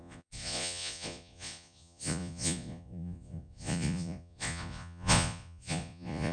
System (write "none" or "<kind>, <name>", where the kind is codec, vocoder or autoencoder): vocoder, Vocos